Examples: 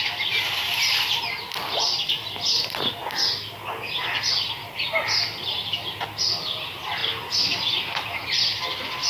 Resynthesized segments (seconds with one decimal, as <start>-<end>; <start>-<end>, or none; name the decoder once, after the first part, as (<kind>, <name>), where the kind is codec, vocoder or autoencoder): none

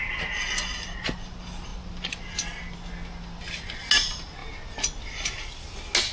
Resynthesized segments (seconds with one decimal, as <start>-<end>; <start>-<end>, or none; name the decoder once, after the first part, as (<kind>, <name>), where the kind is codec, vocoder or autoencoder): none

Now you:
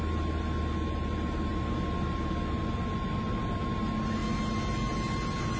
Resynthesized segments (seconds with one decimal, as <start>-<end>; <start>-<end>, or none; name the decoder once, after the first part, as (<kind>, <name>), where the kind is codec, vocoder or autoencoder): none